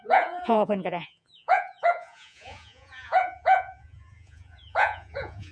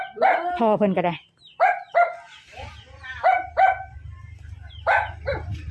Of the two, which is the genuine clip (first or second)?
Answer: second